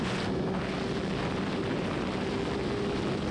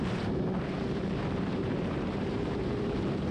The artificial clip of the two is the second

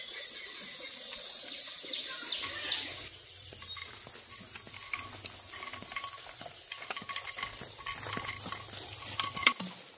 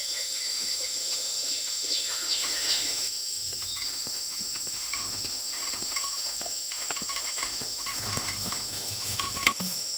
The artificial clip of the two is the second